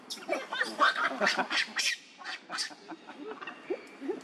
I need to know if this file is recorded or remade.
recorded